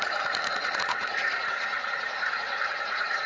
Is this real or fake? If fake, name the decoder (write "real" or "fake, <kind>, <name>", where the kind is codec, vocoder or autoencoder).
fake, vocoder, Vocos